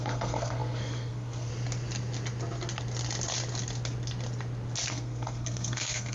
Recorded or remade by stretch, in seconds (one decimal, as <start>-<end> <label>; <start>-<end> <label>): 0.0-1.5 remade; 1.5-4.9 recorded; 4.9-6.1 remade